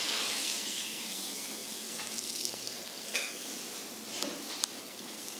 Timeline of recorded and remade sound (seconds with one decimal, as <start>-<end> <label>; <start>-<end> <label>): 0.0-3.5 remade; 3.5-4.8 recorded; 4.8-5.4 remade